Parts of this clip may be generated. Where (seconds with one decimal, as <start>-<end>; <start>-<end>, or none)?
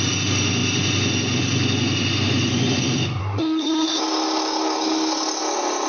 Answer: 3.2-4.0